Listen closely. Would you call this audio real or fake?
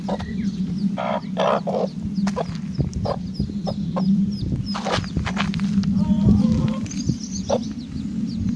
real